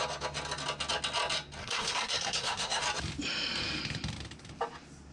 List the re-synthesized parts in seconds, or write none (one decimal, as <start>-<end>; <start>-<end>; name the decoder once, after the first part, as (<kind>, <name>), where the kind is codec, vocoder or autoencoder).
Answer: 1.6-2.8 (codec, SNAC)